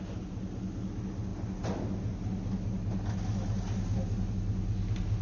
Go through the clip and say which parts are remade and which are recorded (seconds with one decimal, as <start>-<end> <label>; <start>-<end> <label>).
0.0-5.2 recorded